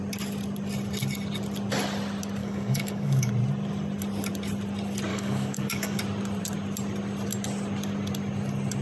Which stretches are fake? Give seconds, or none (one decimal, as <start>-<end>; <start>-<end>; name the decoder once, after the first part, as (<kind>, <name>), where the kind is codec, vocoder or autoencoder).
2.4-3.3 (codec, DAC); 5.1-6.0